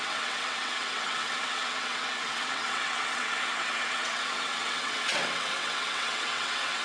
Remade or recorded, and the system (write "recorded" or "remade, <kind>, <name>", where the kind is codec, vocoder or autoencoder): remade, vocoder, WaveNeXt